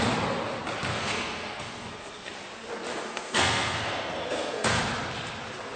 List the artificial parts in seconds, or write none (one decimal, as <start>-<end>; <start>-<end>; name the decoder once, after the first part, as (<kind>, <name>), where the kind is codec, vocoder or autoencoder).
0.9-2.3 (codec, SNAC); 2.9-4.8

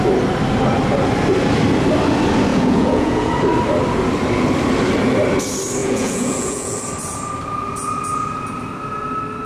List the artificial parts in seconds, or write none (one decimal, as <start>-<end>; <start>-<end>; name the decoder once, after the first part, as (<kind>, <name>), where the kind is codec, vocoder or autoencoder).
2.5-3.3 (vocoder, Vocos); 5.8-6.8

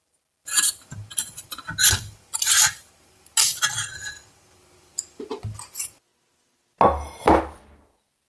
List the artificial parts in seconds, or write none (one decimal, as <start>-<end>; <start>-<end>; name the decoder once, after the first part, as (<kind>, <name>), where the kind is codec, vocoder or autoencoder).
none

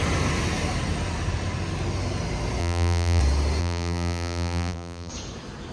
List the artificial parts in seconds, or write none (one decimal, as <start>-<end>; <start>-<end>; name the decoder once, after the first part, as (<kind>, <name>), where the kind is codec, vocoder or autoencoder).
2.6-3.2 (vocoder, BigVGAN v2); 3.6-5.1

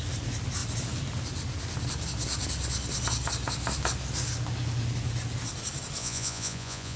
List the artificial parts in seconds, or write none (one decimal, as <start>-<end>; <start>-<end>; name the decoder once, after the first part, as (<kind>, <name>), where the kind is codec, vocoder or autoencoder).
6.0-7.0 (vocoder, Vocos)

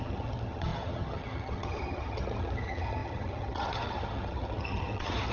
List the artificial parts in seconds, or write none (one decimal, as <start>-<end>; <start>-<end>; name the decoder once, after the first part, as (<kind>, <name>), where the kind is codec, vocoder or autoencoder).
0.0-5.3 (vocoder, HiFi-GAN)

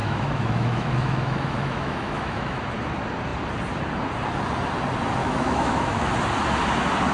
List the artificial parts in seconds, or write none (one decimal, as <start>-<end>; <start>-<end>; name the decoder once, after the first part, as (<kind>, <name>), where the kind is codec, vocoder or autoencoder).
0.0-2.6 (autoencoder, DAC-VAE); 5.2-6.1